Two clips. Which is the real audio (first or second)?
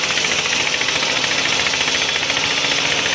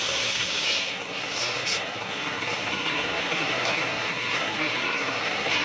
first